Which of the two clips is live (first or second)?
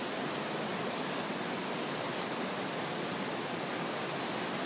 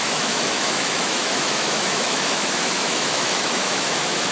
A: first